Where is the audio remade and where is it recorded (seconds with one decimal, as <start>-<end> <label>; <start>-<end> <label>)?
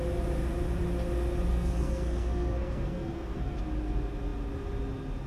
0.0-1.5 recorded; 1.5-3.6 remade; 3.6-5.3 recorded